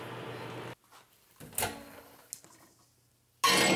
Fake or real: real